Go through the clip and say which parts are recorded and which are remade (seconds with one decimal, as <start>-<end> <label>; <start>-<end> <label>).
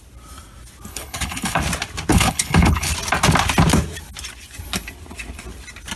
0.0-0.9 recorded; 0.9-1.6 remade; 1.6-2.1 recorded; 2.1-2.9 remade; 2.9-6.0 recorded